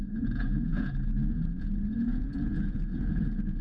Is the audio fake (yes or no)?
yes